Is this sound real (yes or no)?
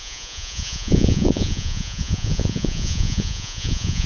no